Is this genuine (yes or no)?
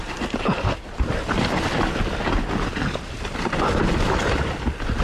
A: yes